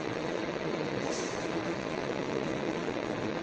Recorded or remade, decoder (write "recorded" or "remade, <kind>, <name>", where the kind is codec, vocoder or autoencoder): remade, vocoder, WaveNeXt